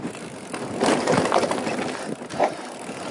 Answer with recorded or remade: recorded